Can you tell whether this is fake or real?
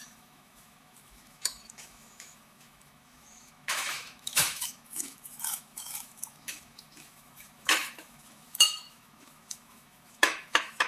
fake